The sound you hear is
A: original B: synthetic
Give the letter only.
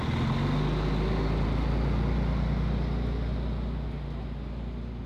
A